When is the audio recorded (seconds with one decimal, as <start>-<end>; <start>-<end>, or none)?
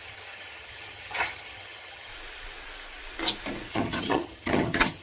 2.1-3.7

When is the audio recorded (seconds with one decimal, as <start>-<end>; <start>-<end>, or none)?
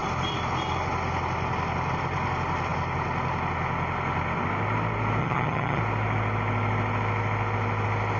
0.0-5.2; 5.8-8.2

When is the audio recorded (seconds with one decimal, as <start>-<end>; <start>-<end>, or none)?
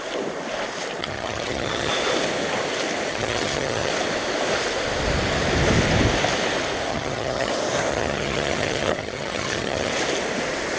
0.0-1.0; 1.9-3.1; 3.9-6.9; 7.5-7.9; 9.9-10.8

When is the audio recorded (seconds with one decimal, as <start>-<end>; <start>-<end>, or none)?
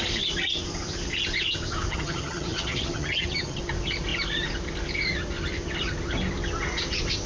0.0-1.9; 3.6-7.3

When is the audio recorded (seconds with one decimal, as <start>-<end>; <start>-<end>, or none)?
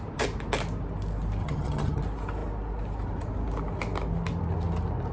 0.0-1.4; 2.0-5.1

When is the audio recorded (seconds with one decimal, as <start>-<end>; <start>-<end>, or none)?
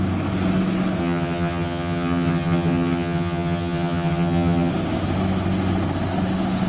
0.0-1.0; 4.7-6.7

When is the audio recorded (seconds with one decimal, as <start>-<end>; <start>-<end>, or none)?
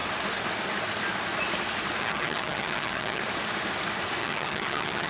0.0-2.0; 3.2-4.2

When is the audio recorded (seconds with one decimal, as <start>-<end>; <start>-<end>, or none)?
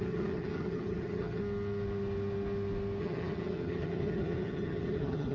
1.4-3.0